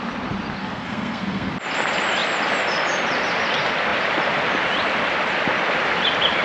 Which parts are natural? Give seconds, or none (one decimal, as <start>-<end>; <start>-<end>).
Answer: 0.0-0.6; 1.5-6.4